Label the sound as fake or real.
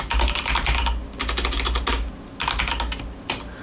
real